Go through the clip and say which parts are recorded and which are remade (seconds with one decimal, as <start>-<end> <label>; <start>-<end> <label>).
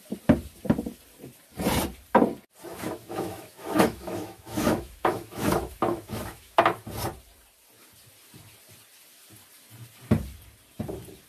0.0-2.7 recorded; 2.7-6.6 remade; 6.6-11.3 recorded